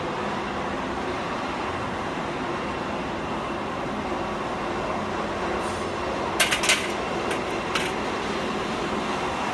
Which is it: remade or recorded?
recorded